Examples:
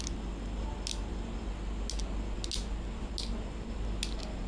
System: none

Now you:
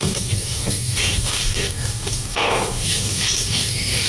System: codec, DAC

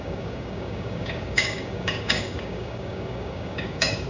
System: codec, DAC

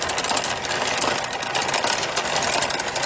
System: none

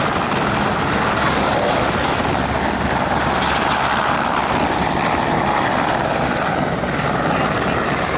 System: none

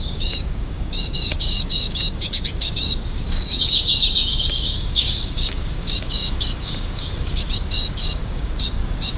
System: codec, DAC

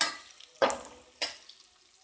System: none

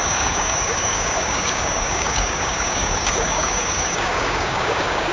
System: codec, DAC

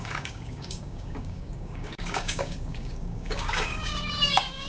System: codec, DAC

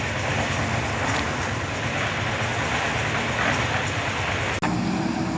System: none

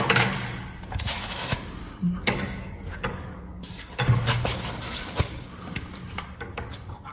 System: codec, DAC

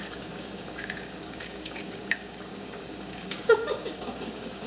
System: codec, DAC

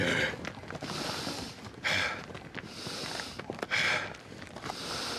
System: none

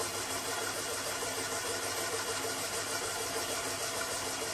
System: none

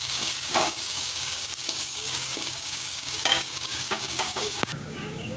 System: codec, DAC